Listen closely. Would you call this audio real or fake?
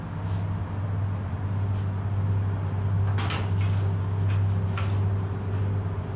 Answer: real